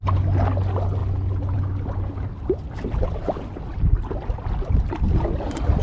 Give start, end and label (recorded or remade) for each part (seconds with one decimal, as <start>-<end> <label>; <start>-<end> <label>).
0.0-5.8 recorded